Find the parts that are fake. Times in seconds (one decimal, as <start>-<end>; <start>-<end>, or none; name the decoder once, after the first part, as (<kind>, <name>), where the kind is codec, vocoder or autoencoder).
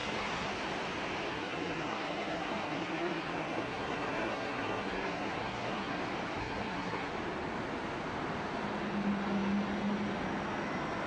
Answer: 0.0-0.5 (codec, SNAC); 1.3-6.0; 6.4-7.1